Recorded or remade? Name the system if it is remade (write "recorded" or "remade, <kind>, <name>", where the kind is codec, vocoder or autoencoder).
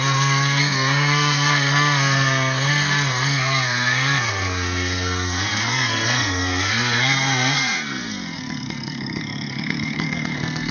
remade, codec, SNAC